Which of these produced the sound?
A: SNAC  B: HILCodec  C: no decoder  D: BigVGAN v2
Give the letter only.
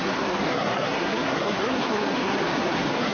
A